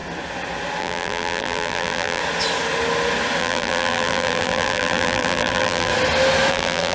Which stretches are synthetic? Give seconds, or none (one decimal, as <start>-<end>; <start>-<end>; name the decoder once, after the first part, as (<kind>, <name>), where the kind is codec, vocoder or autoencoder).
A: 0.8-2.2 (vocoder, BigVGAN v2); 3.4-5.9; 6.5-6.9

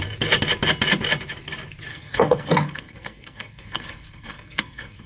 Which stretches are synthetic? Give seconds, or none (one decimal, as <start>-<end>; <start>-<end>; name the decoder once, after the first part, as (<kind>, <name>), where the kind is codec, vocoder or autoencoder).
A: 1.9-5.1 (codec, SNAC)

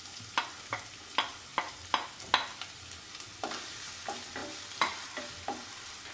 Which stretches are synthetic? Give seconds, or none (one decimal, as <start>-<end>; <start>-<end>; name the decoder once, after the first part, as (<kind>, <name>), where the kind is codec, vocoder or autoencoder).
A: none

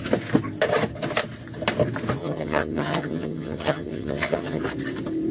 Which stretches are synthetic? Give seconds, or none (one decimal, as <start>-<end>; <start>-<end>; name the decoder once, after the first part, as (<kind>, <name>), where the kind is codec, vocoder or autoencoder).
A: 2.2-4.6 (vocoder, HiFi-GAN)

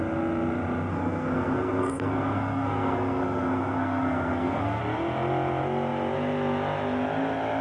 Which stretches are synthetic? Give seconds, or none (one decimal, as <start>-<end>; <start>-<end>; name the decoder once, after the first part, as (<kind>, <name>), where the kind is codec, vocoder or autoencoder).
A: 0.9-4.8 (codec, SNAC)

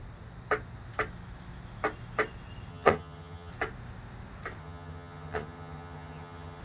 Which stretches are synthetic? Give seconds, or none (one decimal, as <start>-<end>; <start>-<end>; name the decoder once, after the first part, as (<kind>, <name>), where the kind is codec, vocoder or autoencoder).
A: 2.7-3.5 (vocoder, HiFi-GAN); 4.6-6.6

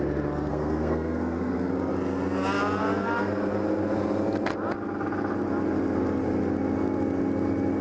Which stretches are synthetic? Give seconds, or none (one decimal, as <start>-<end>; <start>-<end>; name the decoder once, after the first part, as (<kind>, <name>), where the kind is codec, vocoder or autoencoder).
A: 0.5-1.7 (codec, SNAC)

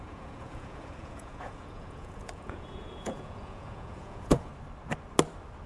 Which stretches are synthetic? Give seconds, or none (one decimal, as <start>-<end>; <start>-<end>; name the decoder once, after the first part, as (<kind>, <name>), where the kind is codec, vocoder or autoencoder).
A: 0.0-4.5 (vocoder, Vocos)